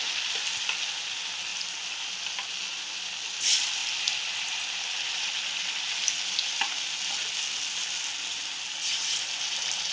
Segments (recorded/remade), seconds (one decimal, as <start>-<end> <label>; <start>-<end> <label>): 0.0-9.9 recorded